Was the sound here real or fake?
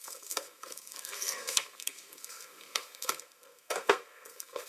fake